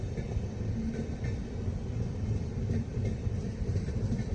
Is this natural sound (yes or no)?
yes